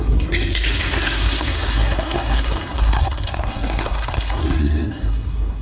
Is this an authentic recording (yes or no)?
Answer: no